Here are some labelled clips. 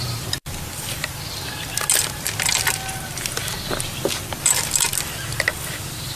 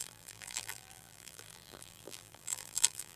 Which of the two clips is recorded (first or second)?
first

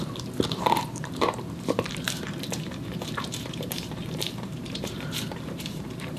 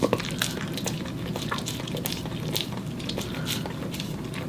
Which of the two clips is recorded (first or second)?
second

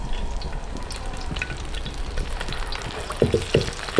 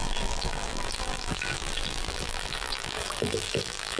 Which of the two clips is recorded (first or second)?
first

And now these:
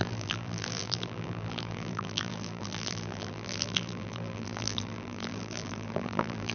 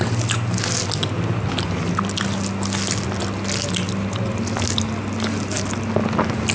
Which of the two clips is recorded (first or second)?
second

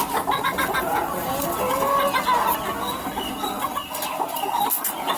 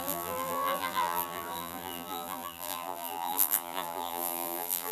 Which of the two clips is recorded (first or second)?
first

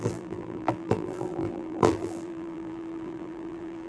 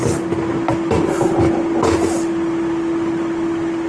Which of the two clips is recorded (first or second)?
second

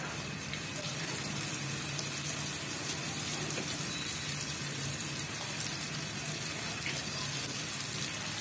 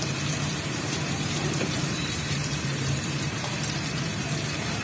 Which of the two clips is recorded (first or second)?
first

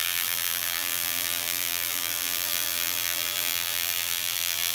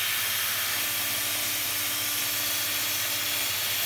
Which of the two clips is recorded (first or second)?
second